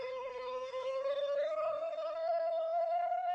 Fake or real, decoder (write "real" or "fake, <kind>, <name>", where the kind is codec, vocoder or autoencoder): fake, codec, SNAC